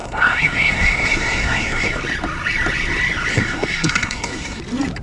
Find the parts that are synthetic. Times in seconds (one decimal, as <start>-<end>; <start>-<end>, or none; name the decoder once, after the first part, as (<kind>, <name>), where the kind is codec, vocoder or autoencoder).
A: 0.0-2.0 (codec, SNAC); 3.3-4.6